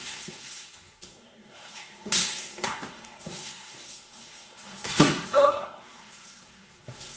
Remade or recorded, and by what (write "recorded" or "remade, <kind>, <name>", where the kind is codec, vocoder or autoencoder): remade, codec, SNAC